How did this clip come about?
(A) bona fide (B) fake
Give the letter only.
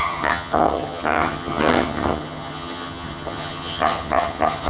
B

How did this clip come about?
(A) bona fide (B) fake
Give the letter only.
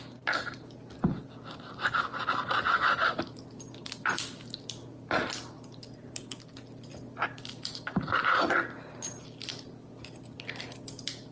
A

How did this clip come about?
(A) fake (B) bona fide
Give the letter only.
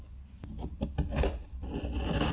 B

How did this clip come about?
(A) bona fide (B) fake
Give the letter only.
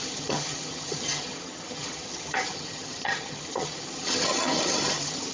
B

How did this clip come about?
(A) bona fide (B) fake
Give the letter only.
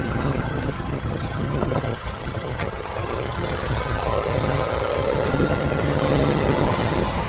B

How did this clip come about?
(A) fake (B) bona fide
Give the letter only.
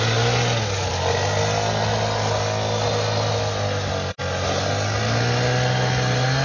B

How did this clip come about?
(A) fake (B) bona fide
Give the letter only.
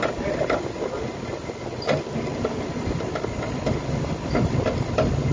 B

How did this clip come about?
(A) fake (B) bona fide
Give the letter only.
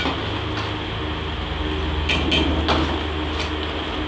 B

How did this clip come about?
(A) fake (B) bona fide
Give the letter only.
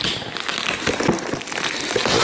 B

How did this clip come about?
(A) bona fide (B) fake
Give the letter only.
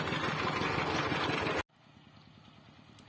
A